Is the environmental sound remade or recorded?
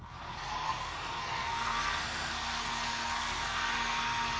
remade